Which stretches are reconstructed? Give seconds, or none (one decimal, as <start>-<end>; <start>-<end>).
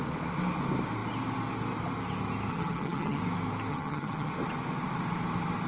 2.5-3.2; 3.7-4.3